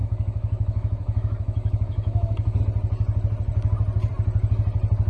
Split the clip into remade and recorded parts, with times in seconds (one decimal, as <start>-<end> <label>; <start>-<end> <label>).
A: 0.0-2.6 remade; 2.6-5.1 recorded